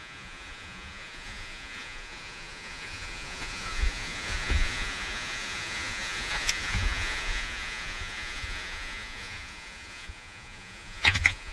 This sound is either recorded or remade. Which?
remade